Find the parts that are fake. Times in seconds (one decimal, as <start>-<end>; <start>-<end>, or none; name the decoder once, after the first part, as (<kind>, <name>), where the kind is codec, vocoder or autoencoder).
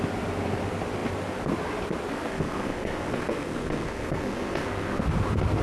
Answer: 2.1-5.0 (codec, SNAC)